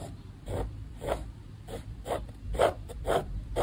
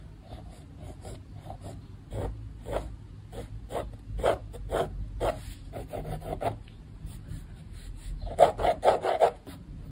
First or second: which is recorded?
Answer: second